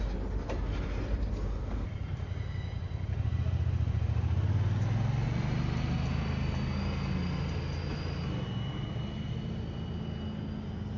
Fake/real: real